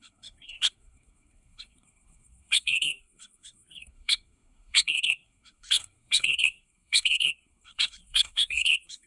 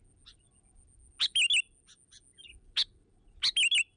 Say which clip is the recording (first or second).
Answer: second